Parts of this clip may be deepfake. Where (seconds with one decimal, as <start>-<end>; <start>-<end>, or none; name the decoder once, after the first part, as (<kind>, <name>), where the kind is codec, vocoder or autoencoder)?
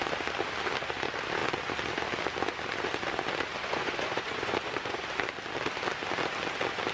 3.6-5.0 (vocoder, Vocos)